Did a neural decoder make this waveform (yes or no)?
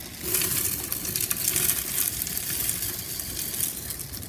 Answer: no